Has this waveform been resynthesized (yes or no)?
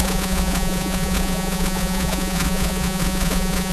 yes